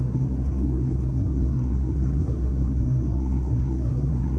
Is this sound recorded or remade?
remade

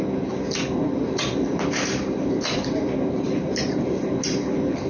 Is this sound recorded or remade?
remade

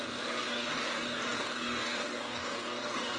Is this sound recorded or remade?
remade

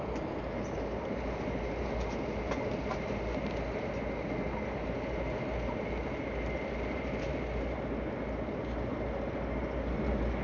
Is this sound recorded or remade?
recorded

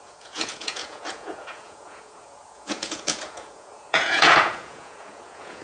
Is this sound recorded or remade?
remade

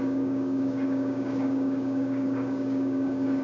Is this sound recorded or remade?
remade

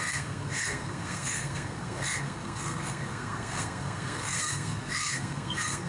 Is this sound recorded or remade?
remade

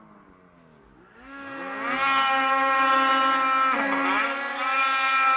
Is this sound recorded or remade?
recorded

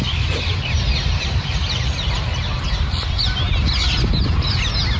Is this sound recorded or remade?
recorded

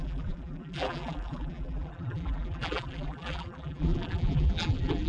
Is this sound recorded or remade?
remade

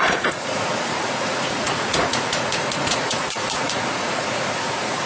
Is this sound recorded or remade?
remade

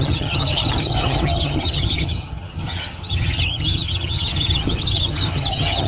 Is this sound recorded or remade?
remade